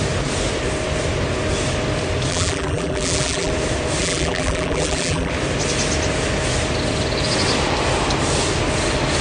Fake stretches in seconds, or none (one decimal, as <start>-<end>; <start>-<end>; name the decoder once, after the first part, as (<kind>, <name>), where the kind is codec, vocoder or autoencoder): 2.3-3.5 (vocoder, BigVGAN v2); 4.0-5.3